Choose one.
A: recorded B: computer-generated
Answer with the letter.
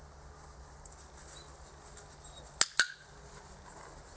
A